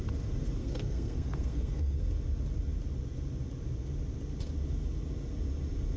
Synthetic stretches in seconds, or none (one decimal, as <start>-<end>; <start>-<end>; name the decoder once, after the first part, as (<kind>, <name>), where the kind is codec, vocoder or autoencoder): 0.6-2.1 (codec, SNAC)